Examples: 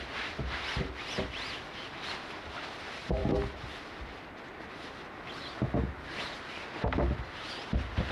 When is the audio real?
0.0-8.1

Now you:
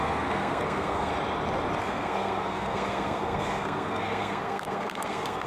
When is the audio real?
1.1-1.8